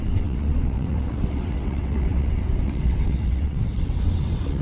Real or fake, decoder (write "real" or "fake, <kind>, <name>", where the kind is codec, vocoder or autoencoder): fake, vocoder, WaveNeXt